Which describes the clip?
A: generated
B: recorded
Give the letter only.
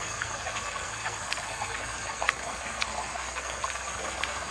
A